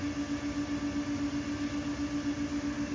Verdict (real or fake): real